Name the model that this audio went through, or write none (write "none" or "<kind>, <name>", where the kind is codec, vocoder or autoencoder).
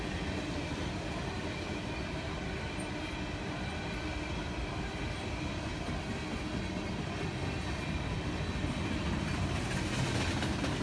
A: none